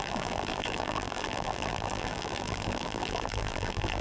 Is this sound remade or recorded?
remade